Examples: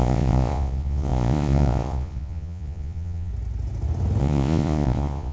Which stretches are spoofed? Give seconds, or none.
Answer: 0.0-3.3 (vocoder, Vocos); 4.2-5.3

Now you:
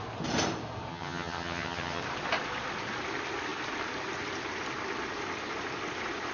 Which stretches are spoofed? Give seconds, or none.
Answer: 0.9-2.0 (vocoder, HiFi-GAN)

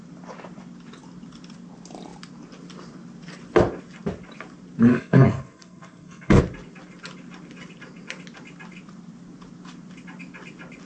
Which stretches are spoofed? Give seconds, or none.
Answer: 4.9-6.4 (codec, SNAC)

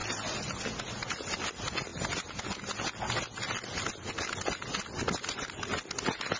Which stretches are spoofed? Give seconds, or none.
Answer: none

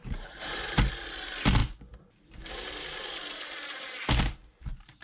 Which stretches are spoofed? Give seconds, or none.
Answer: 0.0-0.6 (vocoder, BigVGAN v2)